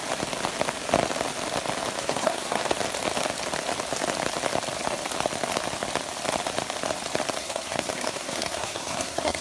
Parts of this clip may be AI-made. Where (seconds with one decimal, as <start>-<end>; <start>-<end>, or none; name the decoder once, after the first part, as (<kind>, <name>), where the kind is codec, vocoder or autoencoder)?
2.0-2.6 (codec, SNAC); 7.4-9.4